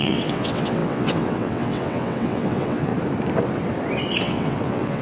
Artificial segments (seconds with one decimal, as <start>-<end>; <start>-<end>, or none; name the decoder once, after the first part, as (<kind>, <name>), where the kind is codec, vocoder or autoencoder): 0.0-2.9 (vocoder, WaveNeXt); 4.2-5.0